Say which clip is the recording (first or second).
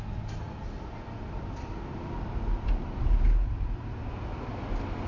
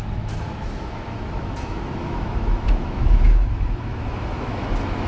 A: first